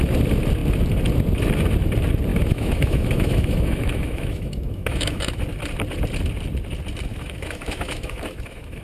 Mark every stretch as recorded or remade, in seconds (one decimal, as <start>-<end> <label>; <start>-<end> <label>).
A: 0.0-2.3 recorded; 2.3-5.4 remade; 5.4-7.1 recorded; 7.1-8.8 remade